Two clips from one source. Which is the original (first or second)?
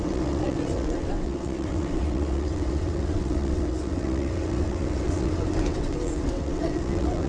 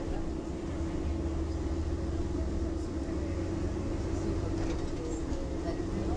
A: second